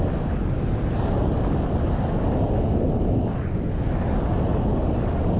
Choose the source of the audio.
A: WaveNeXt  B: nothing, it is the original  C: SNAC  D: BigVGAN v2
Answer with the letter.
B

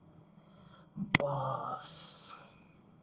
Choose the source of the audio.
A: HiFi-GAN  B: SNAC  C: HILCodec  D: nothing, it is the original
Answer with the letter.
B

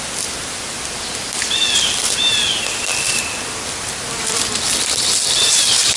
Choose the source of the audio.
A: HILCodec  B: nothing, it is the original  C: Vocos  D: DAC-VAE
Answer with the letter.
B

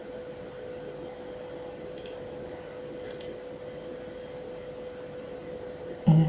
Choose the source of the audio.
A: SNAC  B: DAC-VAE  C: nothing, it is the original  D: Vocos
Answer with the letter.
C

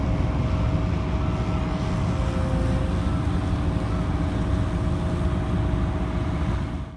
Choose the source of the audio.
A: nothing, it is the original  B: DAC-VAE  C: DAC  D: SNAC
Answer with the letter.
A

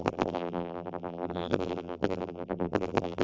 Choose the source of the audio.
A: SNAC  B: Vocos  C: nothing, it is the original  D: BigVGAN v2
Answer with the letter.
D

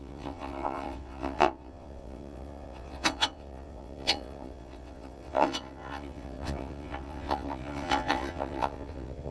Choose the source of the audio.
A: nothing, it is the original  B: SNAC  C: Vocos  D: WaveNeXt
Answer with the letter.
D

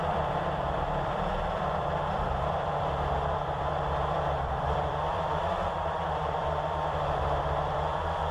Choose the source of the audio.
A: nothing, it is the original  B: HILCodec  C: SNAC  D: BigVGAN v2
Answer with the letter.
D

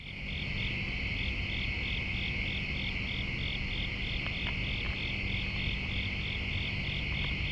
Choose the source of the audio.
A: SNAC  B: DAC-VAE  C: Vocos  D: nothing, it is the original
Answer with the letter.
D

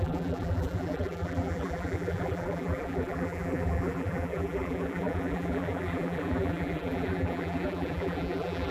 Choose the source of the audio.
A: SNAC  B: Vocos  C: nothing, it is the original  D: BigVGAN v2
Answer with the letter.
D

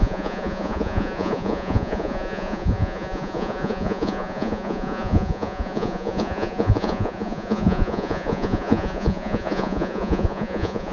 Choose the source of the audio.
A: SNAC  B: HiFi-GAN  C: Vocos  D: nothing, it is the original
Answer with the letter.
C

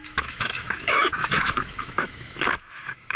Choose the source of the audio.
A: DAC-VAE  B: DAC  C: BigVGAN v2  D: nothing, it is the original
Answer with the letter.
A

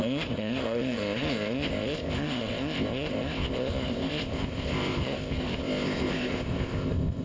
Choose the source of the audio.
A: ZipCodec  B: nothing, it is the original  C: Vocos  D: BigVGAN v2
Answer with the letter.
A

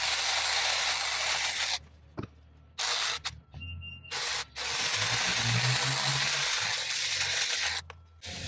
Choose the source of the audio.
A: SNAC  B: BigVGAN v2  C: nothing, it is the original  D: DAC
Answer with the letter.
C